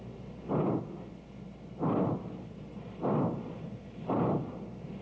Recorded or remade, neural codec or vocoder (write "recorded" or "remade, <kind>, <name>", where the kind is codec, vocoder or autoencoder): recorded